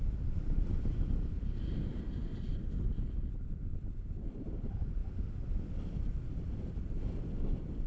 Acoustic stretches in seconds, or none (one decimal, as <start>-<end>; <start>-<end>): 2.5-4.4; 5.0-6.3